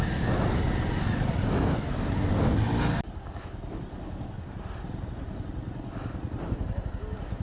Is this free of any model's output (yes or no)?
yes